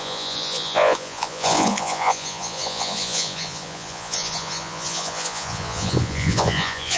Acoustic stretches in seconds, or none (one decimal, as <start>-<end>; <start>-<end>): none